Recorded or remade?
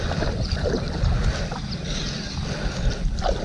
recorded